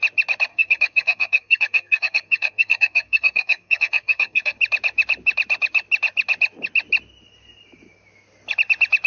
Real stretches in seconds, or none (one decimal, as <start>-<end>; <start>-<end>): 0.0-0.5; 4.6-9.1